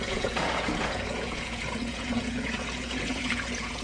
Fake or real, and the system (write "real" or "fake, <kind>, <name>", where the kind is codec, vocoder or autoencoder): fake, vocoder, Vocos